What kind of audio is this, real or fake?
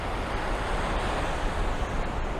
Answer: real